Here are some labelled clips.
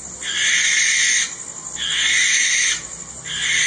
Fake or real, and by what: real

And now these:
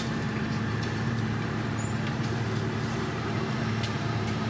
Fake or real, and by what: fake, vocoder, BigVGAN v2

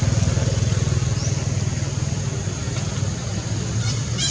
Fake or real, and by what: real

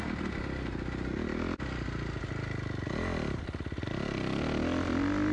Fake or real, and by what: real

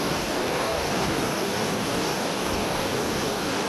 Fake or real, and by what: fake, codec, DAC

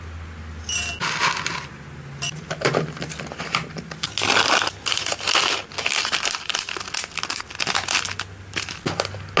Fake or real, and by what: real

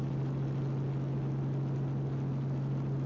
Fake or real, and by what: real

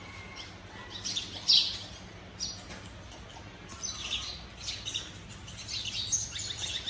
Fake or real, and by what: real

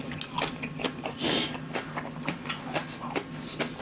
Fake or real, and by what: real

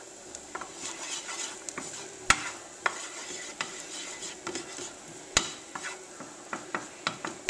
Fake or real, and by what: real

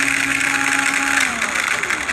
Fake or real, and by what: real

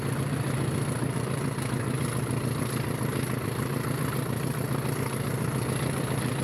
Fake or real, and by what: fake, vocoder, BigVGAN v2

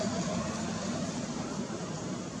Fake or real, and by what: real